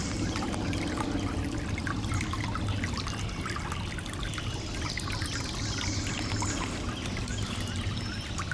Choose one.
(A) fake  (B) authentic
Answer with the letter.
B